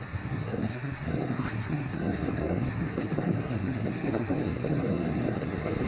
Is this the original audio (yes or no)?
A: no